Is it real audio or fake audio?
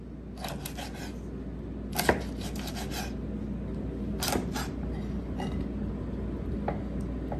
real